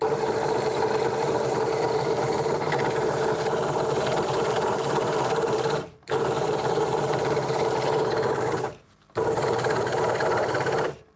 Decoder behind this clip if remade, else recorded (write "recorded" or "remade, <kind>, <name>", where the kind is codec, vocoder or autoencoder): remade, vocoder, BigVGAN v2